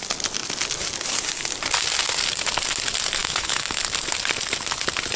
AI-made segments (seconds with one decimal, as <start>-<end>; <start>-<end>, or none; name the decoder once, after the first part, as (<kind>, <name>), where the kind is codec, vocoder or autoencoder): 3.2-3.8 (autoencoder, DAC-VAE)